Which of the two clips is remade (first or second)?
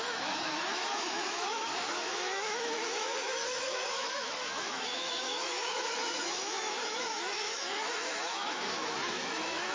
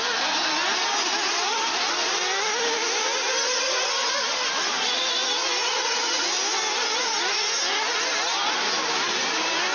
first